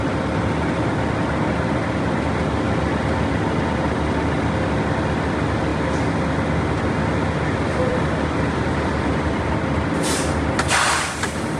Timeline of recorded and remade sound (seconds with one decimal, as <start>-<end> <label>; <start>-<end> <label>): 0.0-7.9 recorded; 7.9-9.4 remade; 9.4-11.6 recorded